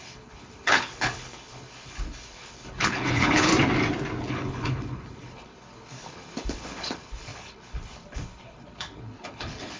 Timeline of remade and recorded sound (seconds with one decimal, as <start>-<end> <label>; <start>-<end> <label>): 0.0-3.5 remade; 3.5-4.2 recorded; 4.2-9.8 remade